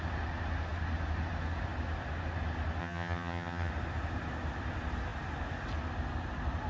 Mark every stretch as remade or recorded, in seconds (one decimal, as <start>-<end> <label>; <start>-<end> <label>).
0.0-2.8 recorded; 2.8-3.7 remade; 3.7-6.7 recorded